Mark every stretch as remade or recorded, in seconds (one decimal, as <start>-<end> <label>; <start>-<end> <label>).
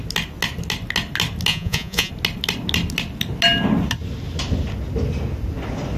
0.0-1.5 recorded; 1.5-2.1 remade; 2.1-6.0 recorded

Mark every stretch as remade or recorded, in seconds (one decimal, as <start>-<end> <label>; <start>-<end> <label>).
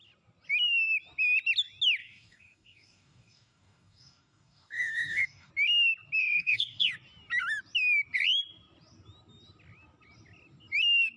0.0-2.0 recorded; 2.0-5.5 remade; 5.5-6.2 recorded; 6.2-6.9 remade; 6.9-11.2 recorded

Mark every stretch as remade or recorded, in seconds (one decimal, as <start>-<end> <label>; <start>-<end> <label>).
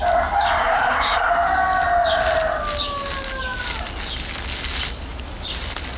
0.0-0.6 recorded; 0.6-1.3 remade; 1.3-6.0 recorded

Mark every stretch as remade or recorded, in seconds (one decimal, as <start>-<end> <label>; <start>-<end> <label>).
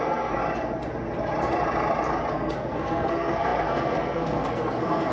0.0-0.4 remade; 0.4-2.3 recorded; 2.3-5.1 remade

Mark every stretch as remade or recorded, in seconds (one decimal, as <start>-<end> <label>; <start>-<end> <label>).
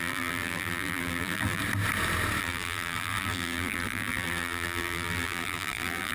0.0-1.6 remade; 1.6-2.4 recorded; 2.4-6.1 remade